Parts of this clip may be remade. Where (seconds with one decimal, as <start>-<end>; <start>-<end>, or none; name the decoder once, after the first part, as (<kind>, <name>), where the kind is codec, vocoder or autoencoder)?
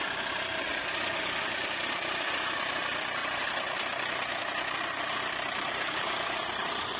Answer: 0.0-0.8 (vocoder, BigVGAN v2); 1.9-3.2; 5.4-7.0